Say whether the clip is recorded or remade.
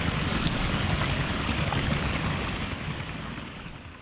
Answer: remade